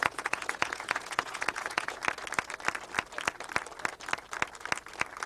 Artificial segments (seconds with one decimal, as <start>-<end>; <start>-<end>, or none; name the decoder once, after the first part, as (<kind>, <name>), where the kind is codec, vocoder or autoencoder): 0.0-2.0 (vocoder, Vocos)